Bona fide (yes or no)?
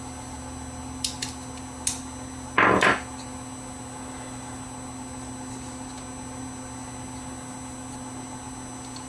yes